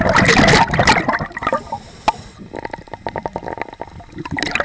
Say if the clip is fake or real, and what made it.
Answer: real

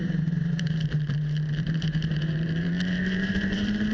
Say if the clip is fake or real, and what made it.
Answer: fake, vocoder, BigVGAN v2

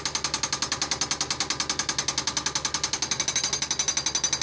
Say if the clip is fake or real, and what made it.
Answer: real